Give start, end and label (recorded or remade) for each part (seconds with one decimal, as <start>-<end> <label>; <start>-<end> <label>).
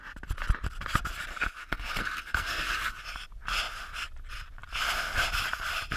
0.0-1.3 recorded; 1.3-3.0 remade; 3.0-6.0 recorded